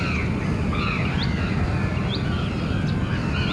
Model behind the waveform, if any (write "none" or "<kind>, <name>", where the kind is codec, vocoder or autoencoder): none